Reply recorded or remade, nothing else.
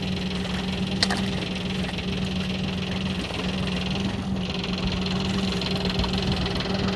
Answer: recorded